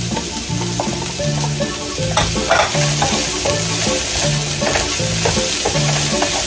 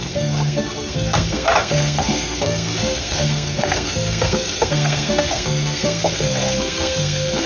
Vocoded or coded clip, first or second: second